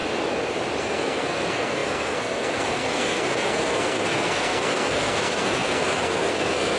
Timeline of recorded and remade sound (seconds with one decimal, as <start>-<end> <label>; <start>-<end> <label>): 0.0-0.8 recorded; 0.8-6.8 remade